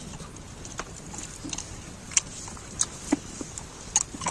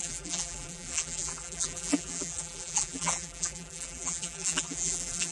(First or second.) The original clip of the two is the first